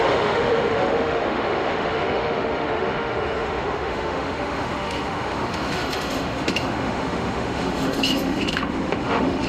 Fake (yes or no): yes